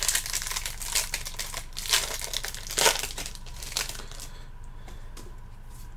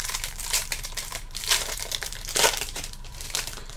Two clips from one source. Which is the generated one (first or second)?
second